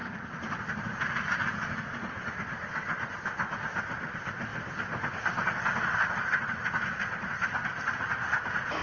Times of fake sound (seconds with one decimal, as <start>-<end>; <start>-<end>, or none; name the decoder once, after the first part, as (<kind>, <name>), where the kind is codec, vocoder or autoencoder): none